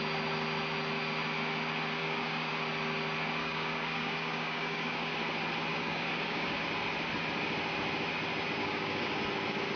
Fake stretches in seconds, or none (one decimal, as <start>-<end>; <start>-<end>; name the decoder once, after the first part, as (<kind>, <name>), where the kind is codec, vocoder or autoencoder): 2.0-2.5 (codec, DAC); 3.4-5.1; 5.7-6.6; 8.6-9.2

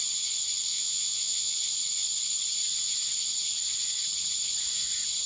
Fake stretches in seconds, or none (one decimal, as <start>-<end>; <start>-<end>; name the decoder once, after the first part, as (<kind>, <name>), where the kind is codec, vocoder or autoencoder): 0.7-1.6 (vocoder, Vocos)

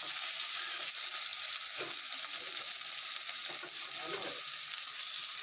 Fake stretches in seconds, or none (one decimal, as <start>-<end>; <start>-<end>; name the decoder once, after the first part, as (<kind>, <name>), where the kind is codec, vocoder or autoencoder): none